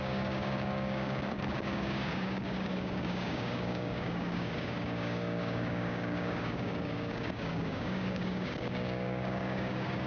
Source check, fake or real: fake